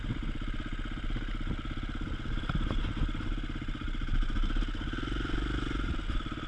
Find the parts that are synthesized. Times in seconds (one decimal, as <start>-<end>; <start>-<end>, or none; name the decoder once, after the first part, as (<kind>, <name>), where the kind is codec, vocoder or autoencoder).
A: none